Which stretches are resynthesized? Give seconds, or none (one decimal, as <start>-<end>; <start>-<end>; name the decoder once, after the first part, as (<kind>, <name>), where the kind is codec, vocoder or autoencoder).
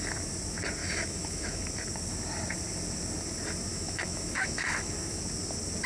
0.8-1.7 (autoencoder, DAC-VAE); 3.7-5.2